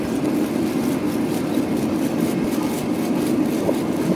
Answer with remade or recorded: recorded